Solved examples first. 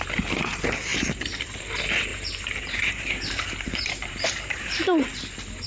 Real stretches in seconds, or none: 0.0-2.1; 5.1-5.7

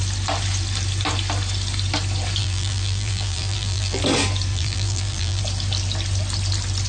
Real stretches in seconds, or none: 0.0-2.4; 4.0-4.5; 5.4-6.9